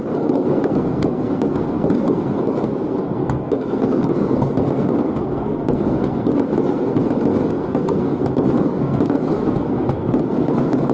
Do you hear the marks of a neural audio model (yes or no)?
yes